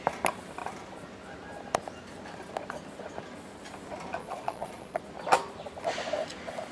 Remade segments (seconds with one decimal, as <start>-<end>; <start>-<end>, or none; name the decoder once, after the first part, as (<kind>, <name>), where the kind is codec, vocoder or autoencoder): 4.2-5.0 (vocoder, Vocos)